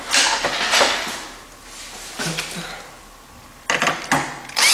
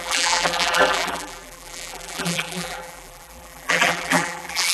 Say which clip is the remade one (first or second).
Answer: second